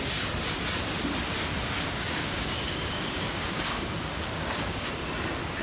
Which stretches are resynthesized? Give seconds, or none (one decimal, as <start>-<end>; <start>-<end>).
1.5-4.9